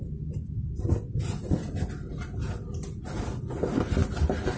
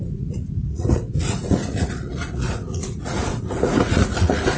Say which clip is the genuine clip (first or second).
first